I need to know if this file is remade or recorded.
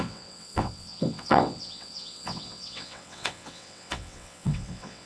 remade